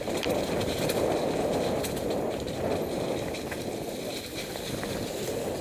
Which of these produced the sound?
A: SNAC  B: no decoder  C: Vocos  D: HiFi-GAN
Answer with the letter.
B